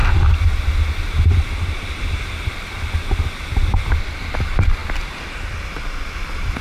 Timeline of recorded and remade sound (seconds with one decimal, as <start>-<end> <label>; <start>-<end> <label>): 0.0-3.6 recorded; 3.6-4.2 remade; 4.2-4.8 recorded; 4.8-5.8 remade; 5.8-6.6 recorded